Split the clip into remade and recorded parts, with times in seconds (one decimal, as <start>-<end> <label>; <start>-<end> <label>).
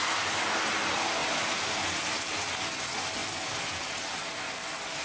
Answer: 0.0-1.2 recorded; 1.2-2.4 remade; 2.4-5.0 recorded